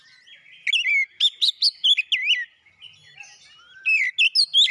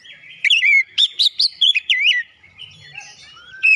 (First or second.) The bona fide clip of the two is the first